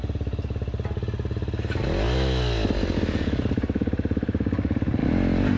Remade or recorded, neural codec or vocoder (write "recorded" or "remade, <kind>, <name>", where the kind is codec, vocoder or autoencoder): recorded